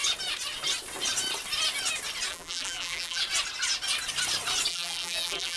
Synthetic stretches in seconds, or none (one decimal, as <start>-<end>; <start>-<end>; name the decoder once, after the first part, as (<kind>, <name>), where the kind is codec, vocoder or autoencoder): 2.3-3.2 (vocoder, BigVGAN v2); 4.7-5.6